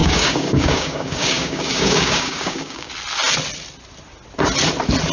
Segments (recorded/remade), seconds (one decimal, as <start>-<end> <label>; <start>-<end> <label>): 0.0-2.9 remade; 2.9-5.1 recorded

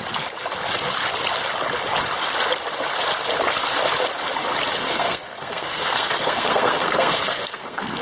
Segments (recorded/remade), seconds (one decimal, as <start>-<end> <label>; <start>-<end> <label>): 0.0-4.8 recorded; 4.8-8.0 remade

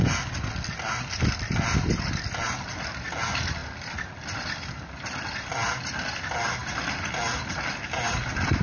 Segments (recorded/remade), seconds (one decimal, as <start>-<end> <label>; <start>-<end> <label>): 0.0-8.6 recorded

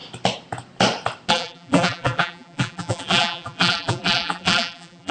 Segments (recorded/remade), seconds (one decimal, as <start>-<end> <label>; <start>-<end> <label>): 0.0-1.3 recorded; 1.3-5.1 remade